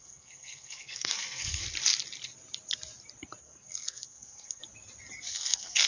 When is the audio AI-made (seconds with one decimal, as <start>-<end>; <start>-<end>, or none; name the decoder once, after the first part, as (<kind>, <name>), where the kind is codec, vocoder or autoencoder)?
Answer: 0.0-1.6 (codec, SNAC); 3.4-4.6; 5.3-5.9